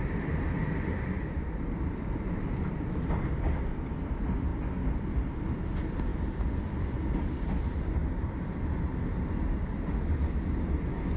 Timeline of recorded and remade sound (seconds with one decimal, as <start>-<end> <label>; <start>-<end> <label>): 0.0-4.5 remade; 4.5-5.0 recorded; 5.0-8.0 remade; 8.0-11.2 recorded